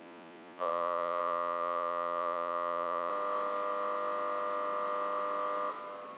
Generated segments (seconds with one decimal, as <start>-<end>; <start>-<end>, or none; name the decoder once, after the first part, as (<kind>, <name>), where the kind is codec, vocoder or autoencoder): 0.0-3.1 (vocoder, Vocos)